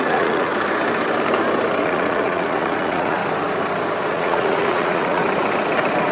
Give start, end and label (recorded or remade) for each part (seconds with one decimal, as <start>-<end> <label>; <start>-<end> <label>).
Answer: 0.0-0.5 remade; 0.5-1.8 recorded; 1.8-3.2 remade; 3.2-4.1 recorded; 4.1-5.2 remade; 5.2-6.1 recorded